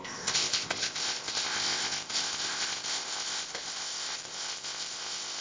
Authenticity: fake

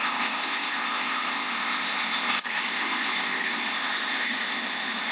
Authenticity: fake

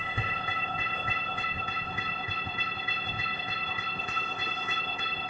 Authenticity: fake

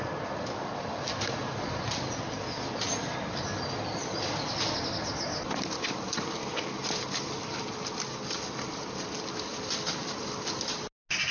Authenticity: real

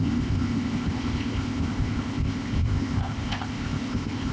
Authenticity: fake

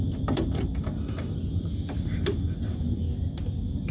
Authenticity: real